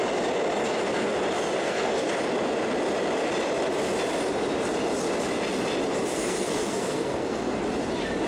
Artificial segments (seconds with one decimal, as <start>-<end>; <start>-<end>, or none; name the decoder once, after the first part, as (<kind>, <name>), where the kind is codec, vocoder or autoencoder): 1.6-2.1 (codec, SNAC); 6.1-7.6